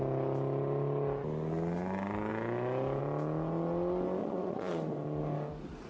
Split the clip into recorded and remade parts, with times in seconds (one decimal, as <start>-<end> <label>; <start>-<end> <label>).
0.0-4.2 recorded; 4.2-4.9 remade; 4.9-5.9 recorded